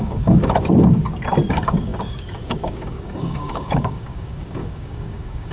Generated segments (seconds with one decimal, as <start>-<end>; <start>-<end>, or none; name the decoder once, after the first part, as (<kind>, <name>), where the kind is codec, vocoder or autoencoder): 0.0-0.4 (codec, DAC); 1.5-5.5